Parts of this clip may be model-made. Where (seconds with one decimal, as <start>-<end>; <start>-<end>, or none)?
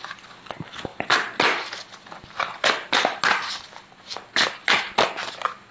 none